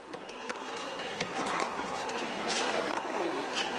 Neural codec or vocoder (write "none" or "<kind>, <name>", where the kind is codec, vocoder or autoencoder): codec, SNAC